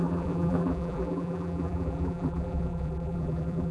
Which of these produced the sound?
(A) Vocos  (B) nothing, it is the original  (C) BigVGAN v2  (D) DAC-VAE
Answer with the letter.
C